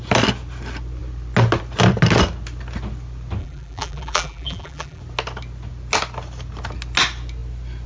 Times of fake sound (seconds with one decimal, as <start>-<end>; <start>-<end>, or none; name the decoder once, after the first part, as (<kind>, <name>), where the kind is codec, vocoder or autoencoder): 3.4-5.0 (vocoder, BigVGAN v2)